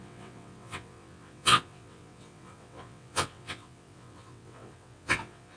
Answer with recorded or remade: remade